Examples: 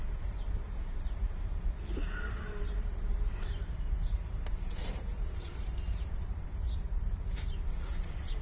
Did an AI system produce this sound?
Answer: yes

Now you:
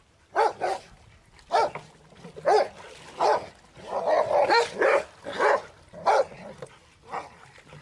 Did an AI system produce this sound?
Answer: no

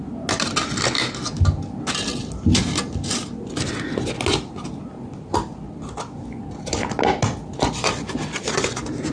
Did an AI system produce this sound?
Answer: no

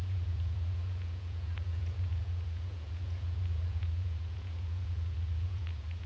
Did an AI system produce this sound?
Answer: yes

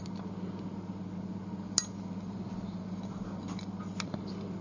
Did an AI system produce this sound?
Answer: no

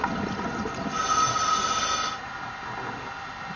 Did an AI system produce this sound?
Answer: no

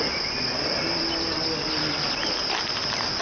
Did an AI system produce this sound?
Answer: no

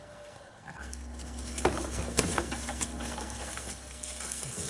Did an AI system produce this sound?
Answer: yes